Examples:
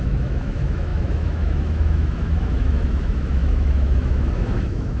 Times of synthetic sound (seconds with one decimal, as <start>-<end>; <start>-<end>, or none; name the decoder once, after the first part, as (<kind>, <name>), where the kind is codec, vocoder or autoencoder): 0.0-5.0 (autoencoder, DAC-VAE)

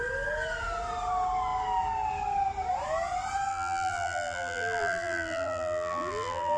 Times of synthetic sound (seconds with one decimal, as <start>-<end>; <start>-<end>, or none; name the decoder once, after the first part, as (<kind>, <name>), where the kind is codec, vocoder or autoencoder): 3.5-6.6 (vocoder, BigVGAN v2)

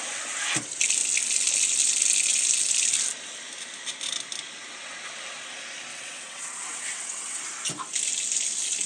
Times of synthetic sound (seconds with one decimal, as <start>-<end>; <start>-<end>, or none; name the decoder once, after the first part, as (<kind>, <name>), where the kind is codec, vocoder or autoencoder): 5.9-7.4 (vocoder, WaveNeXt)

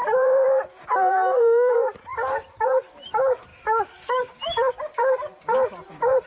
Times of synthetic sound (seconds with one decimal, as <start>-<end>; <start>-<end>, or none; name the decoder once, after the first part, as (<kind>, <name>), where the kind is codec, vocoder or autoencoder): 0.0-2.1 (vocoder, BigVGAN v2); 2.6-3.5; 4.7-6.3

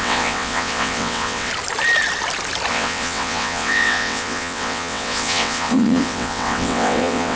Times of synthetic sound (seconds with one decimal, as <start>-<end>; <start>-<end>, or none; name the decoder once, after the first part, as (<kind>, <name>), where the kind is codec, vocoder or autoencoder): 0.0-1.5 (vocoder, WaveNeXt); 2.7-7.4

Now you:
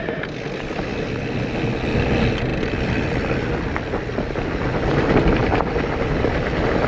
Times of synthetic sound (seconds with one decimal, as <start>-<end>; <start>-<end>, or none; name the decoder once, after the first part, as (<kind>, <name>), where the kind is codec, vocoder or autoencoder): none